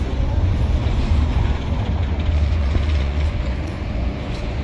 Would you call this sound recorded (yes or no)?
no